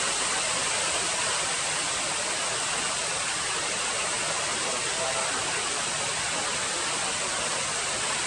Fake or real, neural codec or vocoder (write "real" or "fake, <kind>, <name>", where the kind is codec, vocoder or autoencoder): fake, vocoder, BigVGAN v2